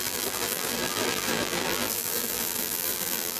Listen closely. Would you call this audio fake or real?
fake